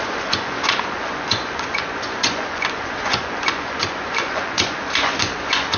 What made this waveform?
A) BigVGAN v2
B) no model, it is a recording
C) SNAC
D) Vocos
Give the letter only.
D